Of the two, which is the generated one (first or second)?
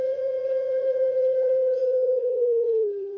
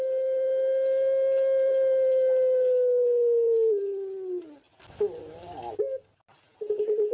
first